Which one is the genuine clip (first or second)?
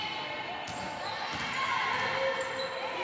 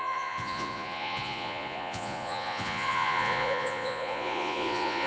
first